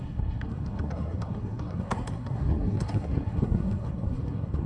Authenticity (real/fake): fake